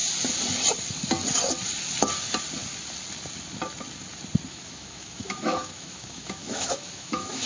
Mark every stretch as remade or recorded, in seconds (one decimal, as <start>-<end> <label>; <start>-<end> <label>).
0.0-4.5 recorded; 4.5-7.5 remade

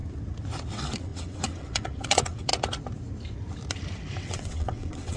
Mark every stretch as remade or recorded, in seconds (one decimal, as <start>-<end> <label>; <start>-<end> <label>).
0.0-0.7 recorded; 0.7-2.5 remade; 2.5-4.2 recorded; 4.2-5.2 remade

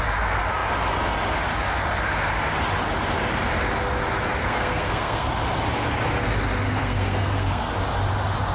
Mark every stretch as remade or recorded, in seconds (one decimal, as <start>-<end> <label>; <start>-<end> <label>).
0.0-4.4 recorded; 4.4-5.3 remade; 5.3-6.8 recorded; 6.8-7.7 remade; 7.7-8.5 recorded

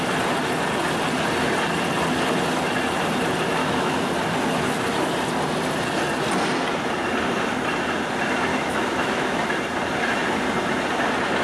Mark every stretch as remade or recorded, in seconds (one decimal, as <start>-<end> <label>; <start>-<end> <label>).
0.0-3.6 recorded; 3.6-4.1 remade; 4.1-8.5 recorded; 8.5-9.4 remade; 9.4-11.4 recorded

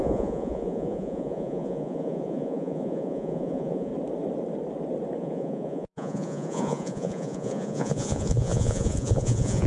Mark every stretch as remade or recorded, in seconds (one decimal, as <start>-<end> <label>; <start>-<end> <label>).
0.0-3.9 remade; 3.9-5.2 recorded; 5.2-9.7 remade

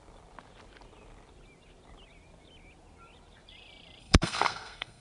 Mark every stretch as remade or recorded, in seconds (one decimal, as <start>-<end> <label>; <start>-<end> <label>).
0.0-4.0 recorded; 4.0-5.0 remade

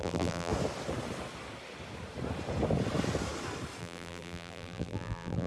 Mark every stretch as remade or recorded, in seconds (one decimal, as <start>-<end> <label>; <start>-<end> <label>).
0.0-0.5 remade; 0.5-3.8 recorded; 3.8-5.5 remade